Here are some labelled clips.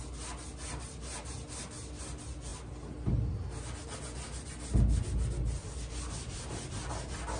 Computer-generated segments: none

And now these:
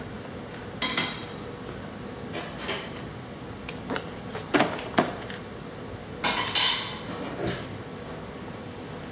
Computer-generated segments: none

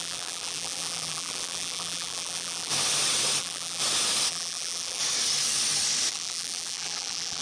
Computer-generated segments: 0.0-2.7 (vocoder, BigVGAN v2); 3.4-3.8; 4.3-5.0; 6.1-7.4

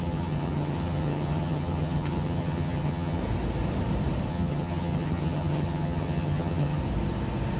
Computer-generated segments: 0.0-3.2 (vocoder, HiFi-GAN); 4.3-6.8

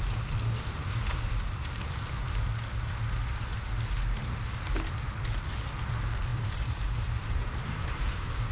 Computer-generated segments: 6.3-8.5 (vocoder, BigVGAN v2)

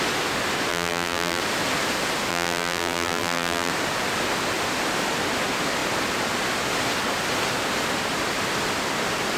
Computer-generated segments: 0.7-1.4 (vocoder, BigVGAN v2); 2.3-3.7

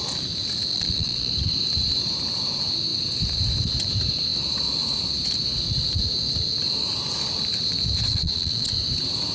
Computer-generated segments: 0.7-1.3 (vocoder, Vocos); 8.1-8.7

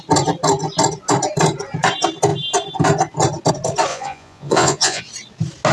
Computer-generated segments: 3.9-5.0 (vocoder, Vocos)